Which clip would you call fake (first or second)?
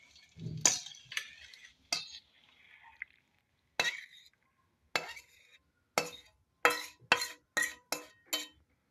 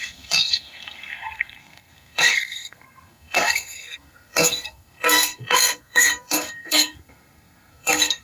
second